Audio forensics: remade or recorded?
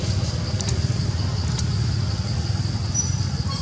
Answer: recorded